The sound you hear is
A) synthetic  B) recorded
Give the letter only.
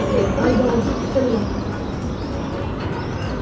B